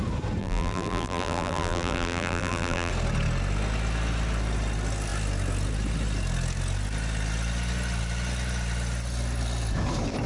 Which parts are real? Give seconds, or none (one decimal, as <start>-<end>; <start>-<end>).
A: 0.0-0.4; 2.9-10.3